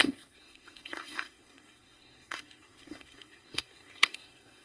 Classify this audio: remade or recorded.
remade